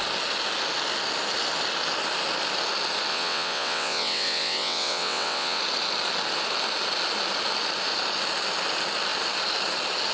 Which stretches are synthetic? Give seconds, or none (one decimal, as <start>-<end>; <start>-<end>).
3.1-5.6